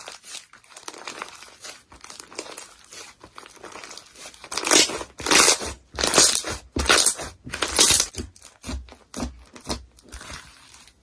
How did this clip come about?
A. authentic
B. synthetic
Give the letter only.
A